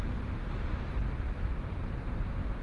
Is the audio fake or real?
real